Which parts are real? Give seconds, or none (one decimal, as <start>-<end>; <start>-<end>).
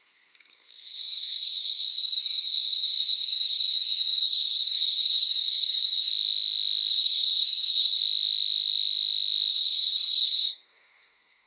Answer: 6.1-6.9; 8.0-9.5